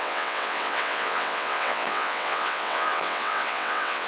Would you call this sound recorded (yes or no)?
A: no